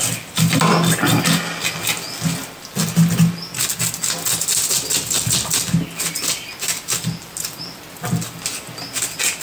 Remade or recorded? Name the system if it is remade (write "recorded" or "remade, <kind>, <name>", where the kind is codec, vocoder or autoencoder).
recorded